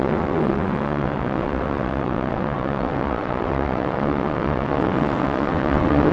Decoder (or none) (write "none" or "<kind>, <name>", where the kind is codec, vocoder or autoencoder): vocoder, WaveNeXt